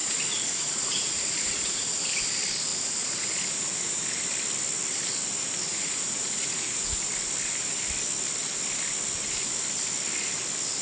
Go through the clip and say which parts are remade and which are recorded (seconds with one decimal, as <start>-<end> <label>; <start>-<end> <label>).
0.0-2.0 remade; 2.0-2.7 recorded; 2.7-4.0 remade; 4.0-5.7 recorded; 5.7-7.1 remade; 7.1-10.8 recorded